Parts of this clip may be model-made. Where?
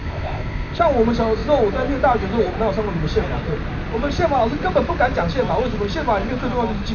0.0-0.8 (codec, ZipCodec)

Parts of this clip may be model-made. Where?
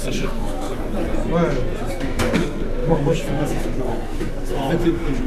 0.0-0.7 (codec, SNAC); 1.9-5.3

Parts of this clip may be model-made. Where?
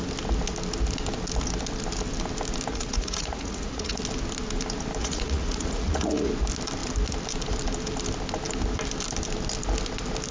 2.7-4.0 (vocoder, Vocos); 5.0-6.3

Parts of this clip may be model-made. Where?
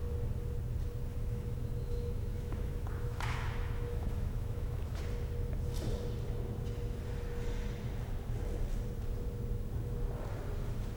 1.1-5.0 (autoencoder, DAC-VAE)